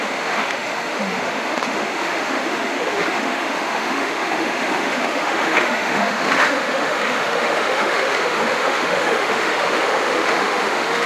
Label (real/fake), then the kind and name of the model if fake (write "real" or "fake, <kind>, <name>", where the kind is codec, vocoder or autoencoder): fake, autoencoder, DAC-VAE